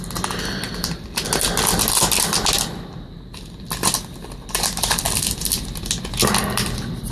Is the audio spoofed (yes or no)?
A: no